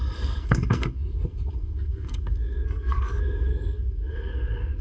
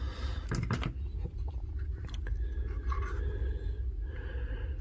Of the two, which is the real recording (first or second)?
second